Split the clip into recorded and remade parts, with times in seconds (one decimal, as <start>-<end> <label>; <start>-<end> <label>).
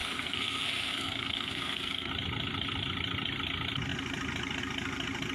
0.0-2.1 remade; 2.1-5.3 recorded